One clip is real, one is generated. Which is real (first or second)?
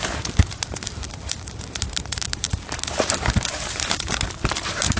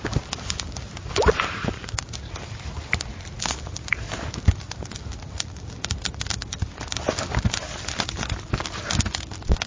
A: second